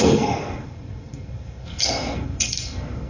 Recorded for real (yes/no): no